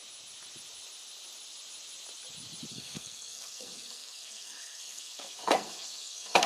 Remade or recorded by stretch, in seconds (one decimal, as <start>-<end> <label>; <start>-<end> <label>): 0.0-2.7 recorded; 2.7-6.5 remade

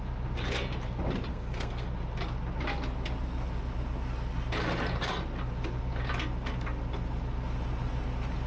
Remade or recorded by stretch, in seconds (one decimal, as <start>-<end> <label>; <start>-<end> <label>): 0.0-1.3 recorded; 1.3-1.9 remade; 1.9-8.5 recorded

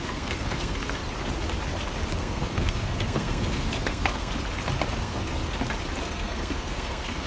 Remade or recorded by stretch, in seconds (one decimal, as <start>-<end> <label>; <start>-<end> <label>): 0.0-1.0 remade; 1.0-2.2 recorded; 2.2-4.3 remade; 4.3-5.0 recorded; 5.0-5.4 remade; 5.4-6.0 recorded; 6.0-7.3 remade

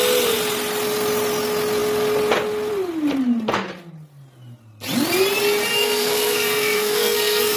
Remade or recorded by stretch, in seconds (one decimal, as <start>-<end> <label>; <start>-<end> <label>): 0.0-5.7 recorded; 5.7-7.6 remade

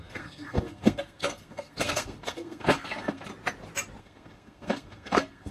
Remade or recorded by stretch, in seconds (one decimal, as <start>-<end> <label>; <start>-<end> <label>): 0.0-3.3 remade; 3.3-4.0 recorded; 4.0-5.5 remade

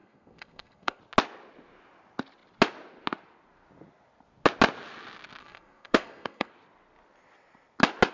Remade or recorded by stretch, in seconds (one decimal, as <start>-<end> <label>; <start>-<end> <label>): 0.0-1.0 remade; 1.0-5.4 recorded; 5.4-6.5 remade; 6.5-8.1 recorded

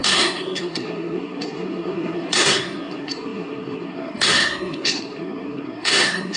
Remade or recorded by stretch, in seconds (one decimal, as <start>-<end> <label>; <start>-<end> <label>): 0.0-6.4 remade